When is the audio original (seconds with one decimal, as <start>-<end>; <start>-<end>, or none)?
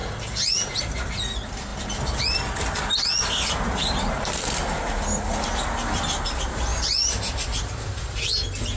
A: 0.0-6.7; 8.2-8.8